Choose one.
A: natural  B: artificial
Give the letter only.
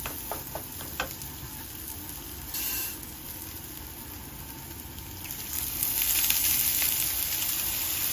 A